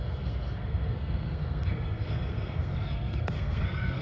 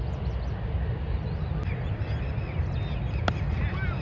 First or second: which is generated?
first